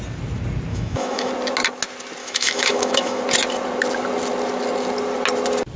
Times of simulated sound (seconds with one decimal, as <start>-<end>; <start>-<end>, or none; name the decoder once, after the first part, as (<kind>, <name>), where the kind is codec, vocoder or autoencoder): 0.7-1.3 (autoencoder, DAC-VAE); 2.2-3.2